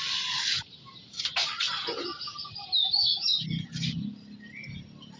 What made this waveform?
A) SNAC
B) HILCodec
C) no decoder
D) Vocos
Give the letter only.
C